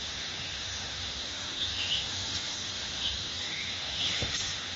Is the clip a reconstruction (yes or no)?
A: yes